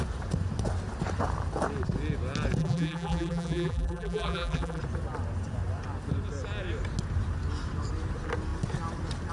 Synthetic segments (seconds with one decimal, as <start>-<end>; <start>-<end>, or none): 2.6-4.8